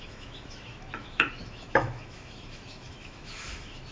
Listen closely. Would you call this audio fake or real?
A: fake